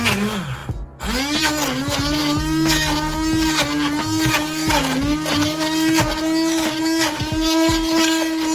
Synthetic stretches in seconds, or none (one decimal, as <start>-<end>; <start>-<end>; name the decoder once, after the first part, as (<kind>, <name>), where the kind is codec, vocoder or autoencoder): none